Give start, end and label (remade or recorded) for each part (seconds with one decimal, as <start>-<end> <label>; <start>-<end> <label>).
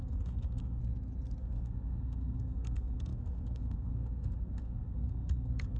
0.0-0.8 remade; 0.8-1.4 recorded; 1.4-5.8 remade